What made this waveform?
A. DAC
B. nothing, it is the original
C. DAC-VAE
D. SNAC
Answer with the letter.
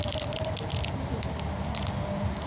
B